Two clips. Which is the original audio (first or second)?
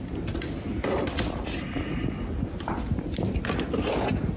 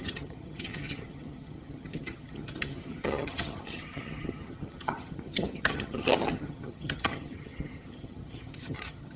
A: first